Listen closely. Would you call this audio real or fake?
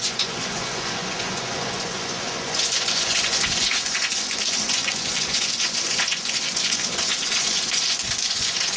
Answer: fake